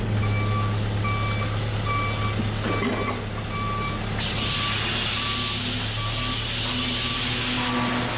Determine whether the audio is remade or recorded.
recorded